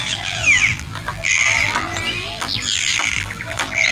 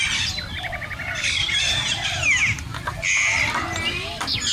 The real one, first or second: second